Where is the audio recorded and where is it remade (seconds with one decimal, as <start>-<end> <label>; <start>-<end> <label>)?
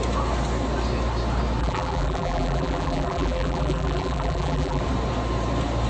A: 0.0-1.6 recorded; 1.6-4.8 remade; 4.8-5.9 recorded